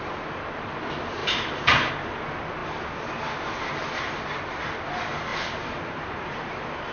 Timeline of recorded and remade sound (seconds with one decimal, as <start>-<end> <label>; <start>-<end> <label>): 0.0-1.2 recorded; 1.2-1.9 remade; 1.9-5.3 recorded; 5.3-6.9 remade

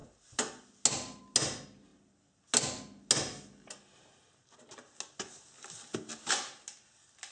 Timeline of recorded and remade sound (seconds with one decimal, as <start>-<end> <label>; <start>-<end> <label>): 0.0-7.3 recorded